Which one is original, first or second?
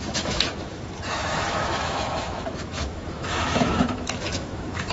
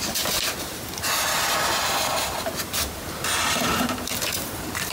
second